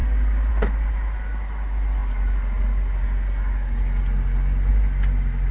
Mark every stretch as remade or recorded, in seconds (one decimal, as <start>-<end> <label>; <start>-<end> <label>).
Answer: 0.0-5.5 recorded